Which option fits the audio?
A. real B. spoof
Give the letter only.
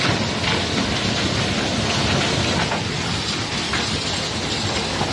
A